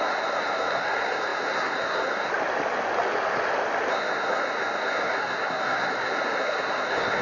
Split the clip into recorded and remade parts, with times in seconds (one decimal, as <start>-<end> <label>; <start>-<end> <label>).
0.0-2.3 remade; 2.3-3.9 recorded; 3.9-7.2 remade